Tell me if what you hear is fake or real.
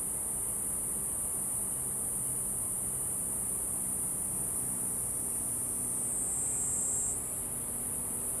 real